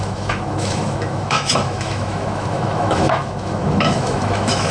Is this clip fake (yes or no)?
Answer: yes